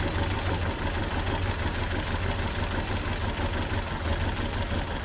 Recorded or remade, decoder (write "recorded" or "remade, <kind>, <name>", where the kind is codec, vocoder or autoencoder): recorded